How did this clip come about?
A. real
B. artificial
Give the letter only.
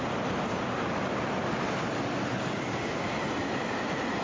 A